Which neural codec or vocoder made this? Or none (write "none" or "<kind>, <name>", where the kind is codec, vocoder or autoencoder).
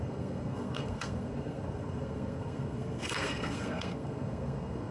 codec, SNAC